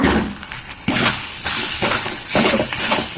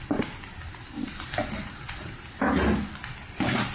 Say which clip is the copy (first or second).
first